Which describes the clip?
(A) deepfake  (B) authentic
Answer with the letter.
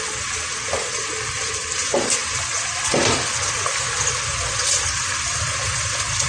B